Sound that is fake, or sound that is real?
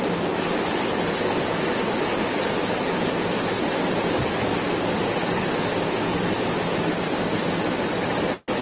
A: real